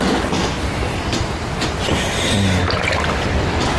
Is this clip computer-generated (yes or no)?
no